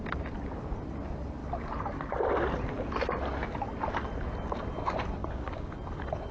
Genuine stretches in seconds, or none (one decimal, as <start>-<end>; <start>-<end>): 0.0-5.2; 5.7-6.3

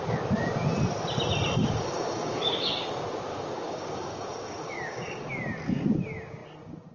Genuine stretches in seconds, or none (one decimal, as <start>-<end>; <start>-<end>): 0.0-1.6; 2.8-3.3; 5.3-6.9

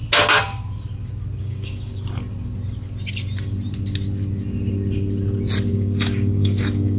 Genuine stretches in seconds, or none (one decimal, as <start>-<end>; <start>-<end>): 0.0-1.4; 1.9-5.7

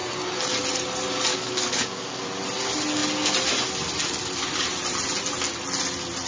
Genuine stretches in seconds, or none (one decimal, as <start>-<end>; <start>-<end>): 0.0-1.3; 2.2-6.3

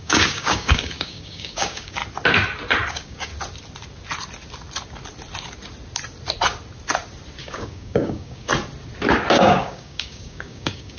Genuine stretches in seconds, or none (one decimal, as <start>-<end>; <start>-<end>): 2.0-2.9; 3.3-7.4; 8.5-9.3

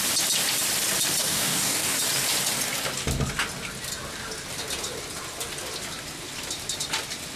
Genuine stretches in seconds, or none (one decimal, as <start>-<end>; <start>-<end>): 0.0-1.2; 2.0-7.4